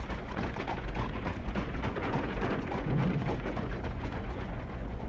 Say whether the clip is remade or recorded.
remade